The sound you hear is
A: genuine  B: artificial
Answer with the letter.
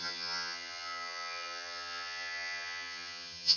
B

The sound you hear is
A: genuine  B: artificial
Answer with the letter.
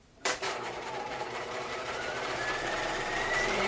B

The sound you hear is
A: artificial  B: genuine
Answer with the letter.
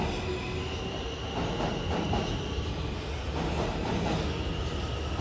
B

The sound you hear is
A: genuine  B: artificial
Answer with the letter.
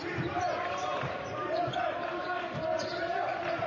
A